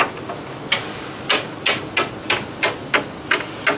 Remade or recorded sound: recorded